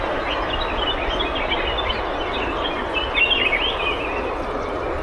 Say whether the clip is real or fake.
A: real